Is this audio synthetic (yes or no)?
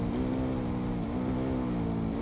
no